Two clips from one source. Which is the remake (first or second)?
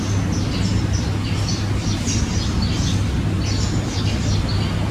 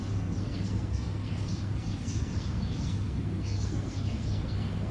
second